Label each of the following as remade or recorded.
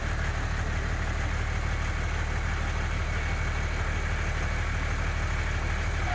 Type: recorded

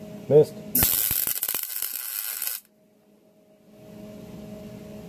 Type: recorded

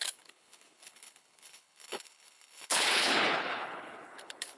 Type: remade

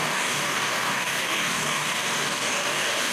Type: remade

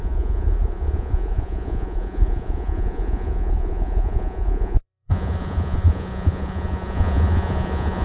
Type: remade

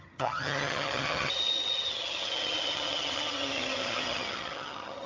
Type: remade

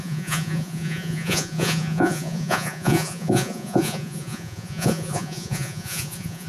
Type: remade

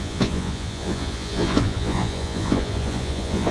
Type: remade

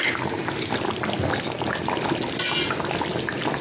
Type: recorded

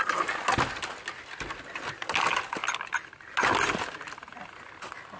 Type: recorded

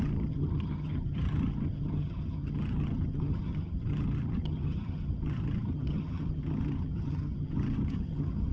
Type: remade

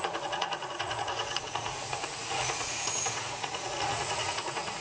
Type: remade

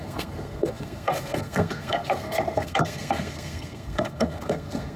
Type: remade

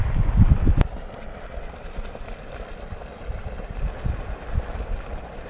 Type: recorded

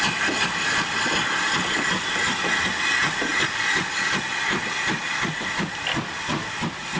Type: recorded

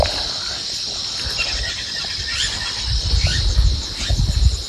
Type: recorded